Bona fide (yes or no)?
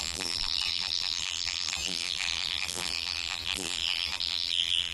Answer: no